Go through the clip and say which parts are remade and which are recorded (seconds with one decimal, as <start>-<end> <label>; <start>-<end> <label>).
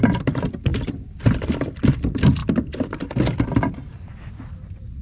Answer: 0.0-0.7 recorded; 0.7-2.0 remade; 2.0-2.4 recorded; 2.4-4.5 remade; 4.5-5.0 recorded